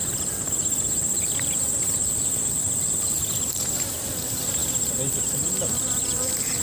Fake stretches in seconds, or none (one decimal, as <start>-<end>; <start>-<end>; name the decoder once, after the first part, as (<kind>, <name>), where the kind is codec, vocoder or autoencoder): none